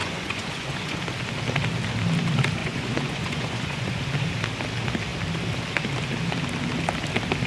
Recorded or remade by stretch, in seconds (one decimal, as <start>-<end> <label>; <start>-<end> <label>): 0.0-1.0 remade; 1.0-2.6 recorded; 2.6-4.0 remade; 4.0-7.5 recorded